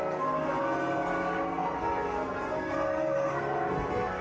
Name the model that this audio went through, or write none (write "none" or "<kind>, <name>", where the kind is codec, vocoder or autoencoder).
codec, SNAC